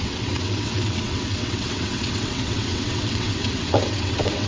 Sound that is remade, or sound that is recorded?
remade